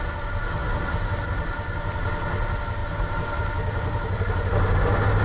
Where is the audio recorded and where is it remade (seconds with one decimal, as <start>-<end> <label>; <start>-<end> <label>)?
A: 0.0-5.2 recorded